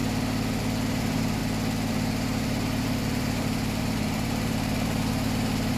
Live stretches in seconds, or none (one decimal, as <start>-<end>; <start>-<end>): 0.0-0.9; 1.4-1.9